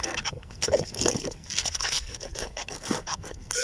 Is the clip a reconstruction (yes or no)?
yes